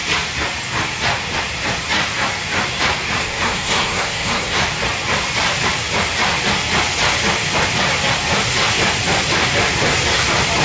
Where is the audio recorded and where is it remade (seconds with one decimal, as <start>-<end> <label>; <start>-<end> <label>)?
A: 0.0-3.2 recorded; 3.2-4.6 remade; 4.6-10.6 recorded